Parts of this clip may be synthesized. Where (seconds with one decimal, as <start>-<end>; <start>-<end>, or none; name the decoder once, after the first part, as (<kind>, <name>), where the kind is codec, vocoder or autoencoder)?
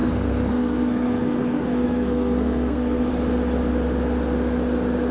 0.0-3.1 (codec, SNAC)